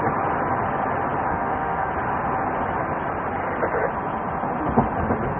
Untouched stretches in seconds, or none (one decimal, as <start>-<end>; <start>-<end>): 0.0-1.3; 1.9-5.4